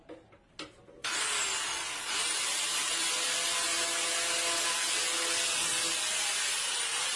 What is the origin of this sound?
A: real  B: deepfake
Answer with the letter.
A